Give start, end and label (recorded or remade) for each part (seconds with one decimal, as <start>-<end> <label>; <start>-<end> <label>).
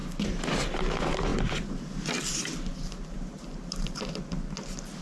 0.0-2.7 recorded; 2.7-4.1 remade; 4.1-5.0 recorded